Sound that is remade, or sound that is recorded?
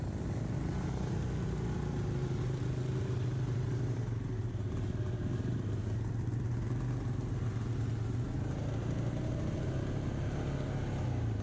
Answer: recorded